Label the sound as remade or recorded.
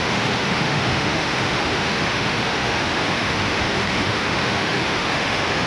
remade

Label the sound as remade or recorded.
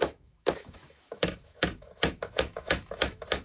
remade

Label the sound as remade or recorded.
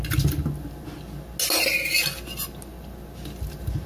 recorded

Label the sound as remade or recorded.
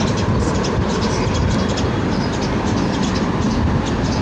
recorded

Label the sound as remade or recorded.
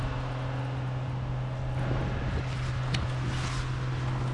recorded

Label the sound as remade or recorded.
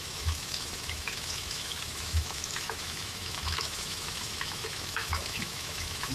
remade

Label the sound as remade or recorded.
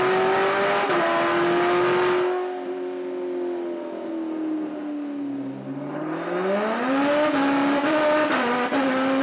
recorded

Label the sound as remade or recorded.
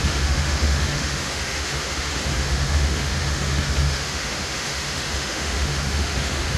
remade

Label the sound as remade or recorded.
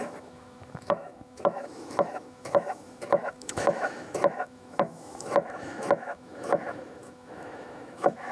remade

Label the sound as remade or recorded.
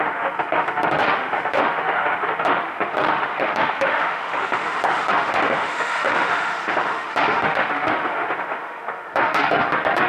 remade